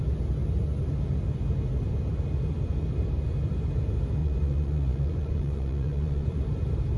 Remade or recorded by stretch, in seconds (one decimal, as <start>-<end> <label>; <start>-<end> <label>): 0.0-4.2 recorded; 4.2-6.4 remade; 6.4-7.0 recorded